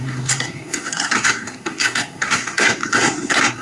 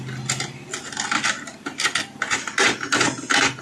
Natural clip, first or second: second